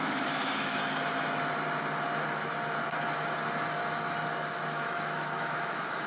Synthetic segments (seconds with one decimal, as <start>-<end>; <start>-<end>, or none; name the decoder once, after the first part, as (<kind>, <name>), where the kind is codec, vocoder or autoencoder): 0.0-0.8 (autoencoder, DAC-VAE); 4.5-6.1